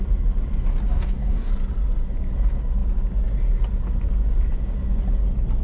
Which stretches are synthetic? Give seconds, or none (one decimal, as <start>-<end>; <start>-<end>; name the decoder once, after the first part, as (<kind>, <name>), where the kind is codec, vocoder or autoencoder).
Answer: 0.9-1.5 (codec, DAC)